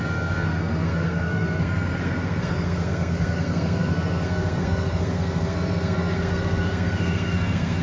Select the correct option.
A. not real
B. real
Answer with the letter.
A